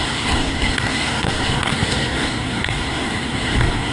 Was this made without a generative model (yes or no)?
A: no